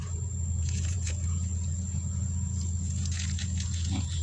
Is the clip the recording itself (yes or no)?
no